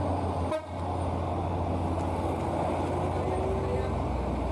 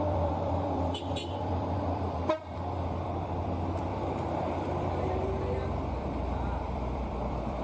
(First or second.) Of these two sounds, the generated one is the second